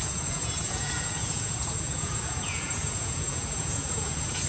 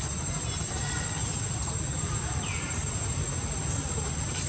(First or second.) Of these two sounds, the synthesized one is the first